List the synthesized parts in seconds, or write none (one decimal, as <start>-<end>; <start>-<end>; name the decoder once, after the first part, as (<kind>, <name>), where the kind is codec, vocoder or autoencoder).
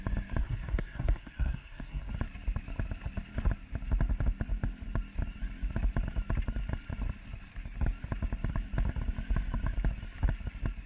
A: 0.4-2.1 (codec, SNAC)